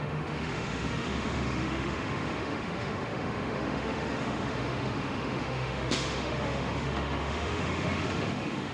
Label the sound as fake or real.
fake